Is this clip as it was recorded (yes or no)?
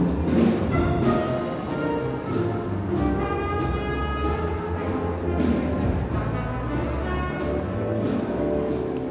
yes